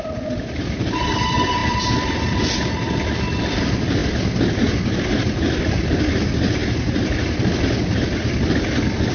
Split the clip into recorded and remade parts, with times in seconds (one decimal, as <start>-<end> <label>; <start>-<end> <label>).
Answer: 0.0-4.0 remade; 4.0-5.6 recorded; 5.6-6.6 remade; 6.6-8.0 recorded; 8.0-9.1 remade